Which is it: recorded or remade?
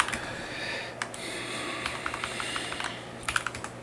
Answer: recorded